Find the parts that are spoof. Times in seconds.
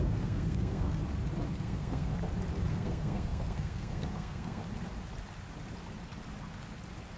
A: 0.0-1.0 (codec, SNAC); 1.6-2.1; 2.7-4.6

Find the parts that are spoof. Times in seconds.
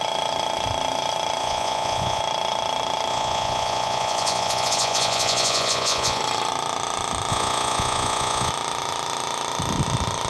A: 1.4-2.2 (vocoder, Vocos); 3.1-6.2; 7.3-8.5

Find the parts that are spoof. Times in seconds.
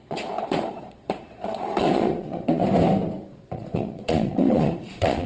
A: 0.0-2.6 (vocoder, Vocos); 3.3-5.3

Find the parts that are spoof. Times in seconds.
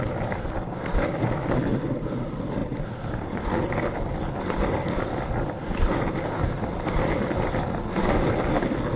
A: none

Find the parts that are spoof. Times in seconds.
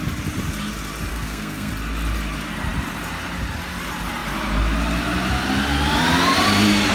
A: 1.1-1.7 (codec, SNAC)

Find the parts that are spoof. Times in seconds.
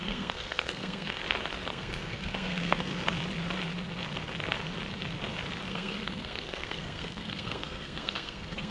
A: 0.0-1.2 (codec, SNAC); 1.7-2.9; 5.7-8.7